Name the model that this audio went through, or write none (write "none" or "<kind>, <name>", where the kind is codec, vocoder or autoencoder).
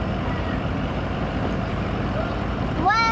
none